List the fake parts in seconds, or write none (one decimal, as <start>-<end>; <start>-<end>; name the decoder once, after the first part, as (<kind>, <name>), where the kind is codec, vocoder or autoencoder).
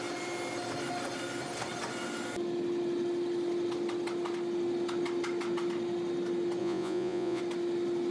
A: 6.6-7.4 (vocoder, Vocos)